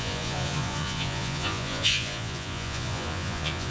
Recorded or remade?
remade